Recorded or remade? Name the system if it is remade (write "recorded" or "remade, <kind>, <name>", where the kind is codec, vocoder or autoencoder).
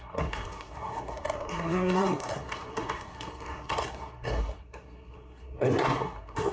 remade, codec, SNAC